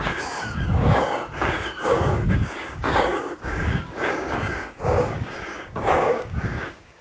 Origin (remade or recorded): remade